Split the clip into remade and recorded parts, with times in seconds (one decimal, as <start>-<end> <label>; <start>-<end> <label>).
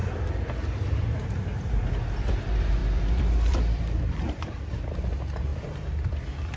0.0-2.8 recorded; 2.8-4.9 remade; 4.9-5.5 recorded; 5.5-6.1 remade; 6.1-6.6 recorded